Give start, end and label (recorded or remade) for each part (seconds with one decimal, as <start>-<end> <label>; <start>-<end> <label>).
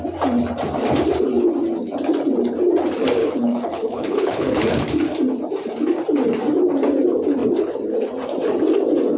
0.0-3.2 recorded; 3.2-4.8 remade; 4.8-9.2 recorded